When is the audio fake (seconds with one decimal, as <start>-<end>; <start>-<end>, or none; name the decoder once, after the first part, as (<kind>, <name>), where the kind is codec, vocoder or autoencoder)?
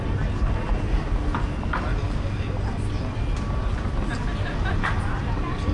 none